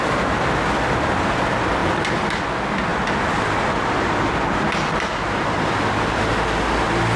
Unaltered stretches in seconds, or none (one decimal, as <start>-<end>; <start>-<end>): 0.0-1.8; 2.4-5.4; 6.3-7.2